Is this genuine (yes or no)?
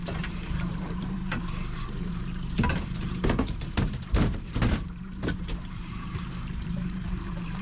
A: no